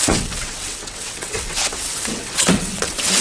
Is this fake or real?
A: fake